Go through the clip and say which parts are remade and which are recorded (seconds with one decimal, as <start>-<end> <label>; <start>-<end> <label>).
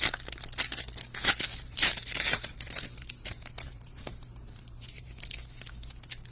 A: 0.0-1.5 recorded; 1.5-5.3 remade; 5.3-6.3 recorded